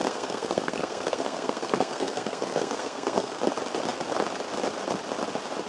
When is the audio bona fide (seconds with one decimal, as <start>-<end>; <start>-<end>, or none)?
3.4-5.7